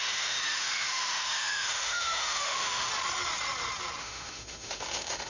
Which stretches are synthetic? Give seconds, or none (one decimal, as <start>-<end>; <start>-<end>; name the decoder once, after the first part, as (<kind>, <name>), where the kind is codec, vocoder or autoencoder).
0.0-2.9 (autoencoder, DAC-VAE); 4.0-5.3